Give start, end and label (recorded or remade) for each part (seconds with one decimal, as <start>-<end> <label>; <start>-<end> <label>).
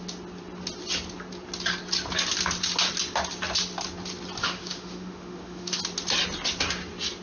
0.0-4.4 recorded; 4.4-5.8 remade; 5.8-7.2 recorded